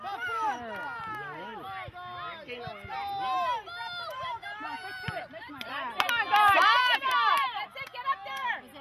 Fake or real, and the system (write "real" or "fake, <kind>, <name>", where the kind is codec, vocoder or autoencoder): real